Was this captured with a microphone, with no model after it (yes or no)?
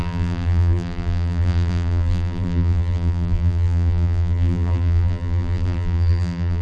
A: no